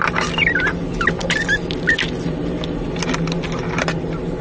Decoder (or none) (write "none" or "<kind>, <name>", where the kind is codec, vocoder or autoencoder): none